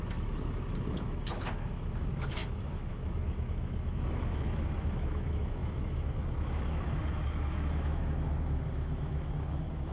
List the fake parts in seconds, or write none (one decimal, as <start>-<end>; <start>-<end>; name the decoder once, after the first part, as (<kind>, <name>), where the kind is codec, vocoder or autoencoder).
0.0-9.9 (autoencoder, DAC-VAE)